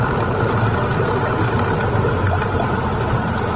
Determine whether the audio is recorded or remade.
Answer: recorded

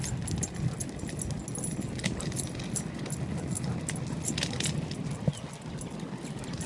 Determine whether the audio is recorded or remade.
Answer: recorded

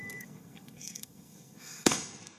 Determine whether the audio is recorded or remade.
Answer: remade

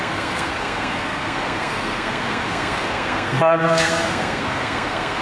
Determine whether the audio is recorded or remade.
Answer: remade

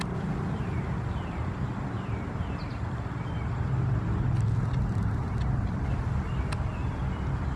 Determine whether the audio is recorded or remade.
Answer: recorded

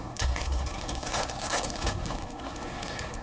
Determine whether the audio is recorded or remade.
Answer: remade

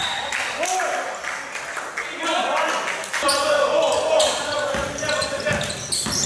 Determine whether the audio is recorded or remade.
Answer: recorded